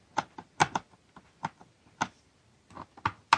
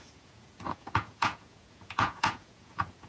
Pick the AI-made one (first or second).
second